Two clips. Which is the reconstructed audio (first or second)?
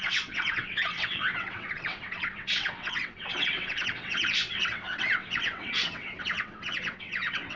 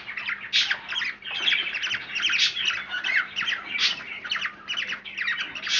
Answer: first